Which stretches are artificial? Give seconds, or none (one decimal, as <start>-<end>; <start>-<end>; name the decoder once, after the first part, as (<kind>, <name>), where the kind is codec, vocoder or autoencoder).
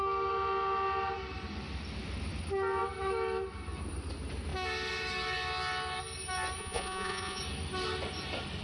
6.6-7.4 (vocoder, Vocos)